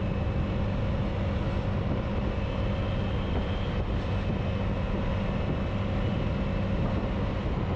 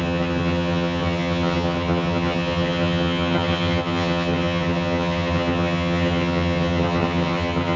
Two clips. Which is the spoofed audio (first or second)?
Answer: second